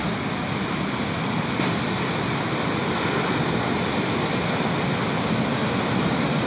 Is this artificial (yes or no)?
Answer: no